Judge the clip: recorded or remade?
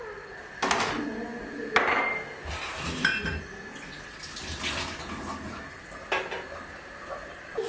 recorded